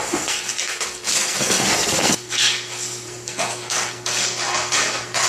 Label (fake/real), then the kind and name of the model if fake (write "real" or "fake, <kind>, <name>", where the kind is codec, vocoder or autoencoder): fake, codec, SNAC